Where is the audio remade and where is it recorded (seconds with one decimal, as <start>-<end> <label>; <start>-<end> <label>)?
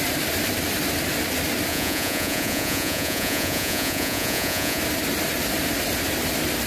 0.0-1.7 recorded; 1.7-4.8 remade; 4.8-6.7 recorded